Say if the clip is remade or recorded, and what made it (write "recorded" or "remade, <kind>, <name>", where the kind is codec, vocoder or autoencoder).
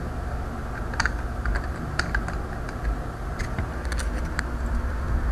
recorded